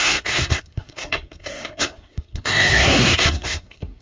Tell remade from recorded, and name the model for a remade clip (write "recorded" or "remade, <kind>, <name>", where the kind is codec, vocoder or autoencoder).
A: remade, codec, SNAC